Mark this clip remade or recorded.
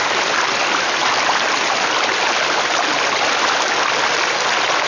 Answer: recorded